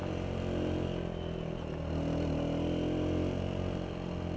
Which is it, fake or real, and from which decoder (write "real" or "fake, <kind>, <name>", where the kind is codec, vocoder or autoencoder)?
real